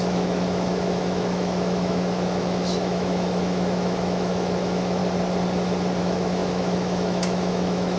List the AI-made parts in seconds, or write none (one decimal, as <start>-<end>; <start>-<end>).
0.0-5.0; 6.0-8.0